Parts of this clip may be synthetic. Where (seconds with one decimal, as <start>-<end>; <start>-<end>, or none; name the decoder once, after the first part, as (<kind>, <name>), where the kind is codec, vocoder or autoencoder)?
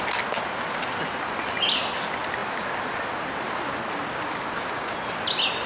none